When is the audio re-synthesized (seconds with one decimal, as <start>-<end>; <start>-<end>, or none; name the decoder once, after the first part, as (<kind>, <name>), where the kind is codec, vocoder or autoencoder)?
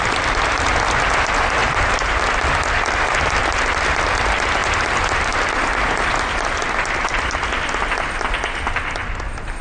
1.6-2.2 (vocoder, BigVGAN v2); 4.6-5.4